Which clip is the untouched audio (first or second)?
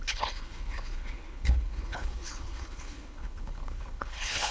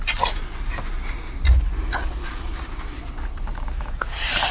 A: second